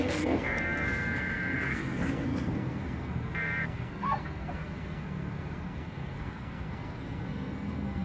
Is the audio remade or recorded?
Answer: remade